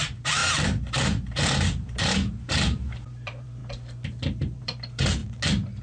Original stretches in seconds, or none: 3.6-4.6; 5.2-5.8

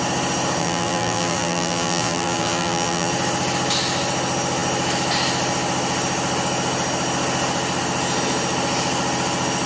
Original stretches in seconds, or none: 0.0-0.6; 3.1-9.7

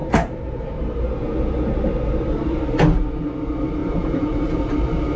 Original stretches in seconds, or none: 2.6-3.8

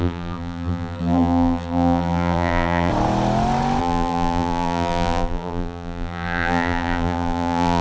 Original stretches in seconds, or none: 2.9-3.8

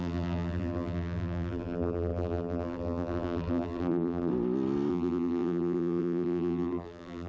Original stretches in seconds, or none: 4.3-4.9

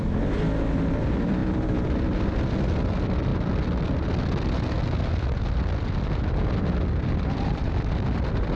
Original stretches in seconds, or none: 3.3-7.0

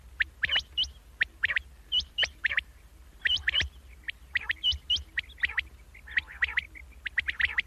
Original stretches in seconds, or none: 0.0-1.3; 4.9-7.7

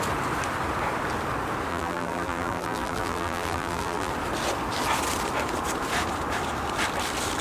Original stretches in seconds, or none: 0.0-1.7; 4.1-7.4